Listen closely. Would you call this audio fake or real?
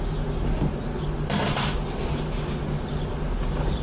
real